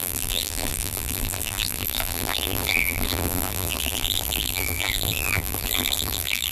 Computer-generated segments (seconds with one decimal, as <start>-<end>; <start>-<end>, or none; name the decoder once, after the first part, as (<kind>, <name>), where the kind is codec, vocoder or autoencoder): 0.0-6.5 (vocoder, BigVGAN v2)